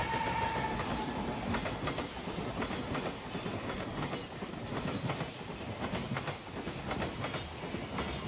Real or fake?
real